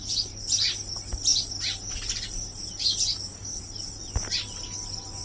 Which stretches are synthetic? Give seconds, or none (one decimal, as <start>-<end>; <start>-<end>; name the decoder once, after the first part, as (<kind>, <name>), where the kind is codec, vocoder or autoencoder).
none